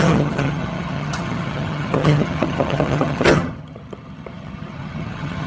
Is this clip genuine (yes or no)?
no